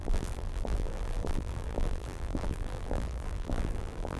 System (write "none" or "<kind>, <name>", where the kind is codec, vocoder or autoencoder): vocoder, BigVGAN v2